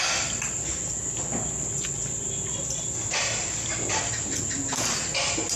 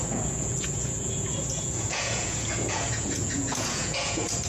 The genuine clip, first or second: first